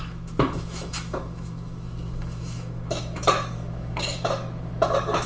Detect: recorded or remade remade